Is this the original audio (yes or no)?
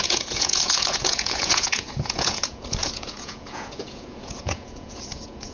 no